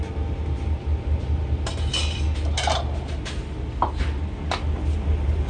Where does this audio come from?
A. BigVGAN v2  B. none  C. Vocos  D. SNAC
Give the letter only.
B